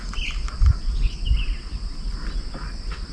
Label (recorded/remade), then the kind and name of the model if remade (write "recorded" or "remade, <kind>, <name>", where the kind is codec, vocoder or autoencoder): recorded